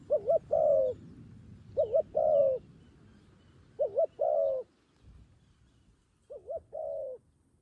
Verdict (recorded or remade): recorded